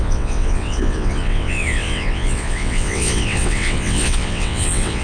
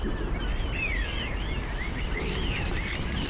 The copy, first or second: first